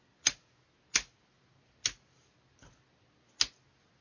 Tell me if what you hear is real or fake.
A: real